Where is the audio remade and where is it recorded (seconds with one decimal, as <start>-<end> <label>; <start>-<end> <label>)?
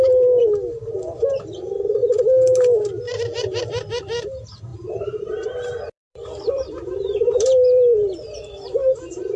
0.0-0.4 remade; 0.4-1.3 recorded; 1.3-2.0 remade; 2.0-4.0 recorded; 4.0-9.4 remade